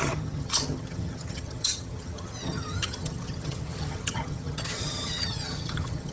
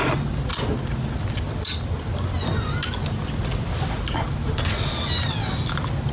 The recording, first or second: second